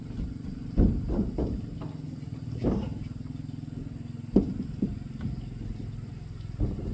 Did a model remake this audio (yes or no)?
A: no